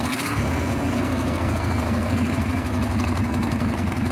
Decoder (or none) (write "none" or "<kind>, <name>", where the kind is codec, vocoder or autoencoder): codec, SNAC